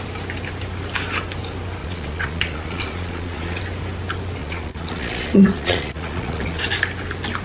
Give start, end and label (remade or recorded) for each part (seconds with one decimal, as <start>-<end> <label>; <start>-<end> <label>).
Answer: 0.0-1.8 recorded; 1.8-3.6 remade; 3.6-4.4 recorded; 4.4-6.6 remade; 6.6-7.4 recorded